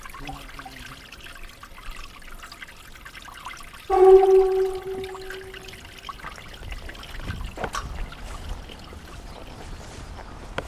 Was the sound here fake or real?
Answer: real